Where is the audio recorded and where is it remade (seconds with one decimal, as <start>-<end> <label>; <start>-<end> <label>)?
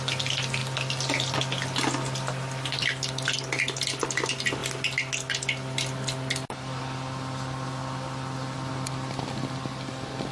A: 0.0-10.3 recorded